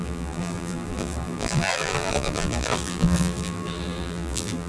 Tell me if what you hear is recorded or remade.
remade